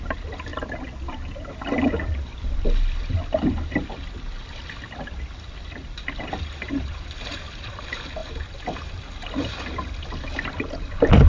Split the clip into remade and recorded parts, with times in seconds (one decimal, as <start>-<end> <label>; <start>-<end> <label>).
0.0-0.5 remade; 0.5-1.9 recorded; 1.9-11.3 remade

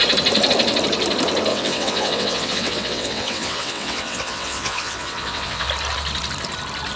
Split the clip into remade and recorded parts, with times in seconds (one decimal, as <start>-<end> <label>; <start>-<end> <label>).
0.0-1.5 recorded; 1.5-5.7 remade; 5.7-7.0 recorded

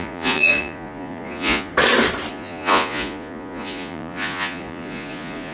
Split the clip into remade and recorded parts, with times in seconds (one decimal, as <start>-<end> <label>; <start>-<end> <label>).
0.0-1.7 remade; 1.7-2.3 recorded; 2.3-5.5 remade

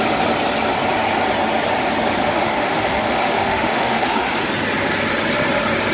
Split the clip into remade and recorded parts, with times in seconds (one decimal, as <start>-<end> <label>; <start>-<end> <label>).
0.0-2.2 recorded; 2.2-4.5 remade; 4.5-5.9 recorded

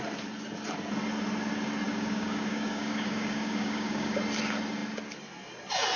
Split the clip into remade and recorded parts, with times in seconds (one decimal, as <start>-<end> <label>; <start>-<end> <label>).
0.0-1.9 recorded; 1.9-4.2 remade; 4.2-6.0 recorded

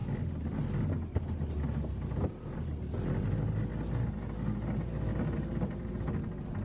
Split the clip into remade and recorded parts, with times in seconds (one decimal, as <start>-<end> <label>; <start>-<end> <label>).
0.0-6.6 recorded

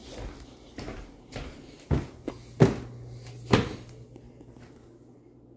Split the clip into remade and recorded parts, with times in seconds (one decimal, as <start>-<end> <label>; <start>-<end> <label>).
0.0-5.6 recorded

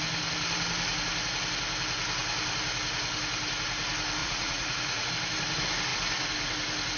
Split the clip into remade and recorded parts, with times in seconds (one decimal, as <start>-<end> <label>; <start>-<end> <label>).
0.0-4.2 recorded; 4.2-5.1 remade; 5.1-7.0 recorded